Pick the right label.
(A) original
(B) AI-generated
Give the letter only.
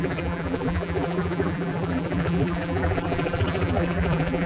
B